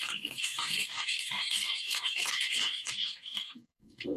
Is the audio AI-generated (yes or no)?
yes